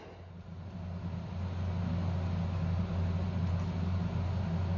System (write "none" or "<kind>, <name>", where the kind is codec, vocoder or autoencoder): none